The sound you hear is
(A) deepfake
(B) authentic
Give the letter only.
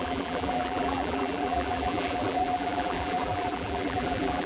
A